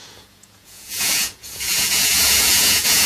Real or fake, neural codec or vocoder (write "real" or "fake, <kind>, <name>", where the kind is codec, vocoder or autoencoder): fake, vocoder, Vocos